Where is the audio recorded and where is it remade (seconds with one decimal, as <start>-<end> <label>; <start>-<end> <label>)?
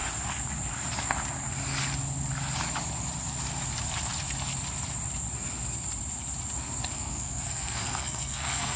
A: 0.0-6.9 recorded; 6.9-8.8 remade